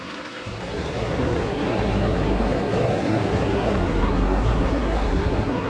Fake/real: fake